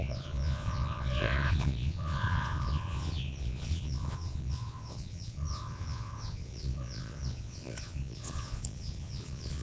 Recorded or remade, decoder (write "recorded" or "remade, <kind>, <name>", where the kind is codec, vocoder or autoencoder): remade, vocoder, Vocos